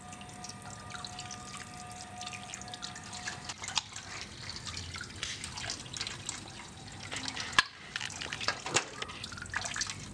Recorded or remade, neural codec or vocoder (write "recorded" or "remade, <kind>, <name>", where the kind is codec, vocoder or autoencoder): recorded